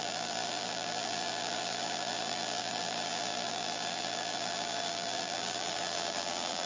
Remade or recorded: remade